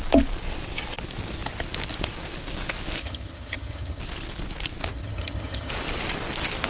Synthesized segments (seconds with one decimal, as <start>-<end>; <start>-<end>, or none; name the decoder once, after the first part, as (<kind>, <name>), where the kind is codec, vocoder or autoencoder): 3.0-4.0 (vocoder, HiFi-GAN); 4.9-5.7